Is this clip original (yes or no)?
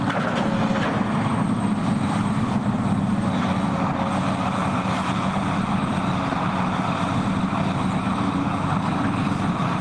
yes